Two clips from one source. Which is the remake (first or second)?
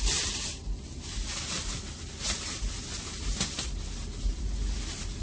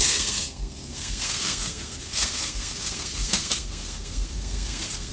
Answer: second